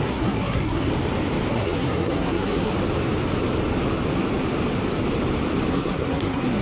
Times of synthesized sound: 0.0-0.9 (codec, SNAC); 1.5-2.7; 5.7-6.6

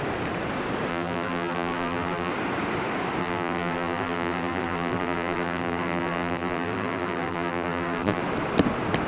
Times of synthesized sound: 0.9-2.3 (vocoder, BigVGAN v2); 3.2-8.2

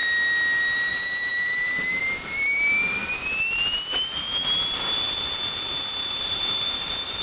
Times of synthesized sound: 0.9-3.0 (vocoder, BigVGAN v2); 6.0-7.2

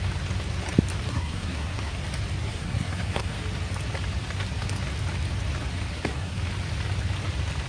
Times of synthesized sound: 1.1-1.9 (codec, SNAC); 2.4-3.4; 5.9-6.4

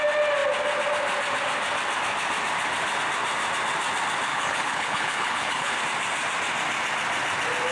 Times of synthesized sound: 4.3-5.8 (codec, HILCodec)

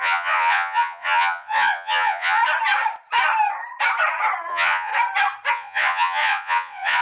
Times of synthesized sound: 0.0-2.4 (vocoder, Vocos); 4.5-4.9; 5.5-7.0

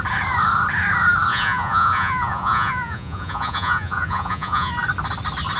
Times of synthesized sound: 1.3-4.7 (vocoder, Vocos)